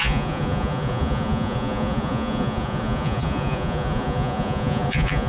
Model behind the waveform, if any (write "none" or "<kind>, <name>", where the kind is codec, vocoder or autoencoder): vocoder, Vocos